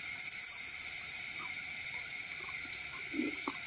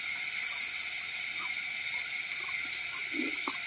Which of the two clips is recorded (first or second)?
second